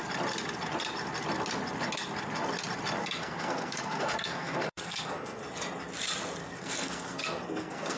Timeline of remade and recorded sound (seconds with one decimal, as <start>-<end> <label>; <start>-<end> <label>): 0.0-3.0 recorded; 3.0-5.4 remade; 5.4-6.4 recorded; 6.4-8.0 remade